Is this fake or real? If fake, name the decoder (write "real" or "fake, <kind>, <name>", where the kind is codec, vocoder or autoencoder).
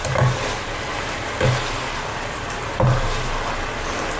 real